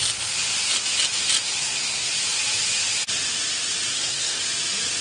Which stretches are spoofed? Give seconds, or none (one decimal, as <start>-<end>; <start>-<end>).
1.6-2.1; 3.9-4.4